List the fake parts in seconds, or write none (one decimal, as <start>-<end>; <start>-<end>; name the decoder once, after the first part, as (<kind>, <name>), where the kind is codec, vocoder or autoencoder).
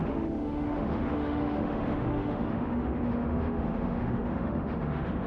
0.0-5.3 (autoencoder, DAC-VAE)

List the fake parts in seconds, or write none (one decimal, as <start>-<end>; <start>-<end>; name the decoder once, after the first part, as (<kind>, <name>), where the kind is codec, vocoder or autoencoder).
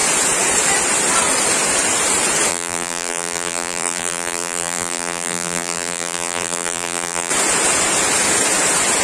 2.5-7.3 (vocoder, BigVGAN v2)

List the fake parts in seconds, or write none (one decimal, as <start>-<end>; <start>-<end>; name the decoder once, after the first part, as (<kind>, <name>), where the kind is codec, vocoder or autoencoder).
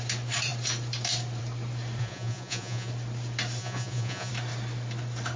2.0-2.9 (vocoder, Vocos); 3.6-4.3